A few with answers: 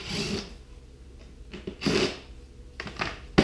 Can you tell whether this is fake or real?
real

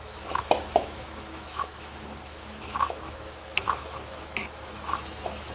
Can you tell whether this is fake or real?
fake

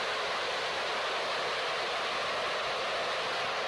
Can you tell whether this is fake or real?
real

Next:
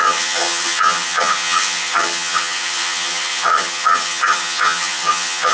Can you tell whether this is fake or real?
fake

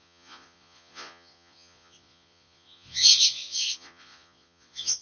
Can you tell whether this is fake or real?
fake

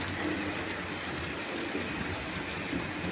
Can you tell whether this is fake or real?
real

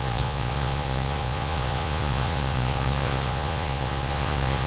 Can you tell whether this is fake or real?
fake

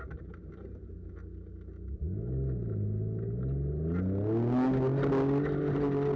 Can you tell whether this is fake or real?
real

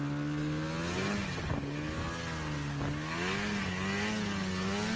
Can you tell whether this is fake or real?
real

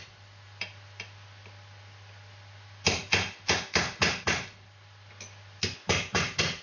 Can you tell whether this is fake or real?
real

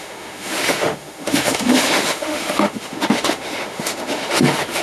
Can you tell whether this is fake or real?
fake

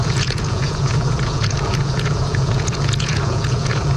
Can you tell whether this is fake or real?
fake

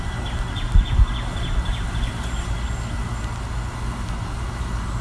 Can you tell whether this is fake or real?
real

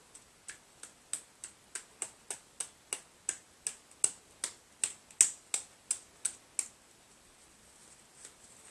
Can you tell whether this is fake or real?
real